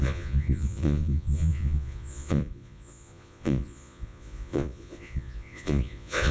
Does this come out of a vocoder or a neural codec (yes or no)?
yes